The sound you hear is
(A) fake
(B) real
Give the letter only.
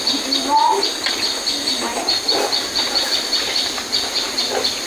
B